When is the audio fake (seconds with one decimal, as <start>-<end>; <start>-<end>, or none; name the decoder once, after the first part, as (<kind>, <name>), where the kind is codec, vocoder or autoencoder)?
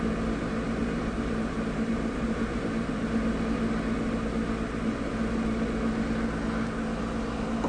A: 0.8-3.0 (vocoder, BigVGAN v2)